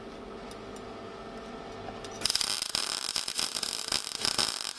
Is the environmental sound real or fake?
real